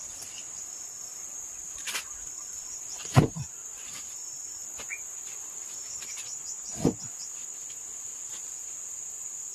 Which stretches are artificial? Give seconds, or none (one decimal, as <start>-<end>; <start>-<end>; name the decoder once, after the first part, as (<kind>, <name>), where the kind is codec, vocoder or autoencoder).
0.0-0.4 (vocoder, BigVGAN v2); 1.3-4.6; 5.3-9.5